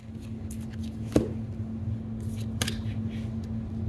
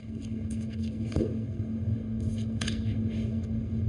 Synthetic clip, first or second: second